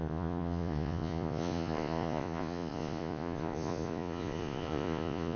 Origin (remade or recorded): remade